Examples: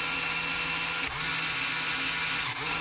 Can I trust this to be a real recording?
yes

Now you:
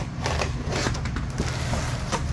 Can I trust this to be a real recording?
yes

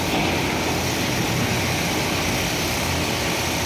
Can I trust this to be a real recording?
yes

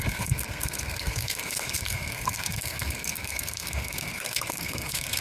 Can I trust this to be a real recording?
no